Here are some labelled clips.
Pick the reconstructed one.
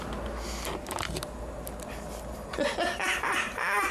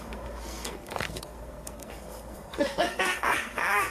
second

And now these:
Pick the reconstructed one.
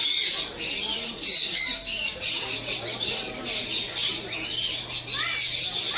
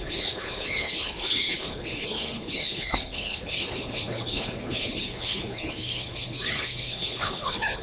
second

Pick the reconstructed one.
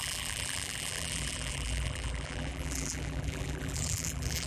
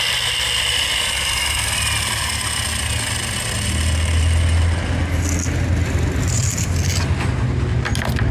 first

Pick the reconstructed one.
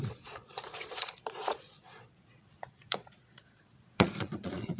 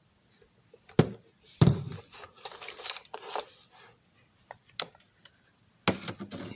first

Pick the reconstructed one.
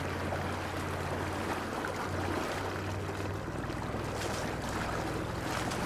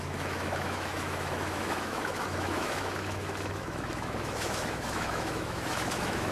second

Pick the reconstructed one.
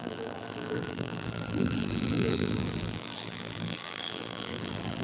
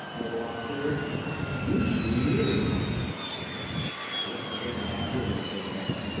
first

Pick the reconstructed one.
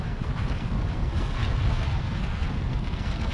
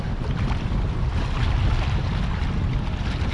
first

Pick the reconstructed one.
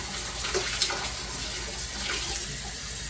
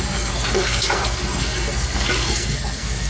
second